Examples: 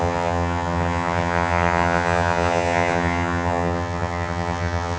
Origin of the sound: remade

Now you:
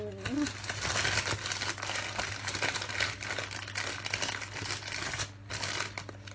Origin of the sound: recorded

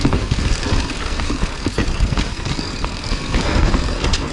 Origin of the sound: remade